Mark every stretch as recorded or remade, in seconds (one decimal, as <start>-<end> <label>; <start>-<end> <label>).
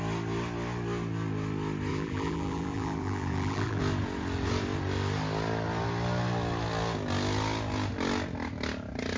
0.0-1.9 recorded; 1.9-3.8 remade; 3.8-9.2 recorded